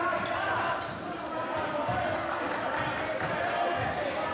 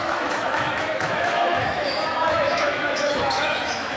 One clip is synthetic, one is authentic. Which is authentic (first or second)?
first